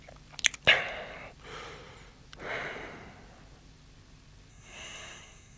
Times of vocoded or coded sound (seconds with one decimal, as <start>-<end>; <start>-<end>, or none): 4.5-5.6